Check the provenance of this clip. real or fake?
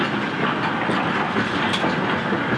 real